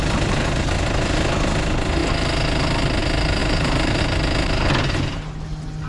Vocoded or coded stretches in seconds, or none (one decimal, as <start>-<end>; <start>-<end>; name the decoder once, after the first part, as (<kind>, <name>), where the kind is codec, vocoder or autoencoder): 3.4-4.0 (vocoder, BigVGAN v2)